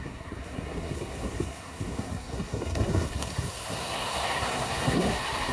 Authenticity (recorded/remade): remade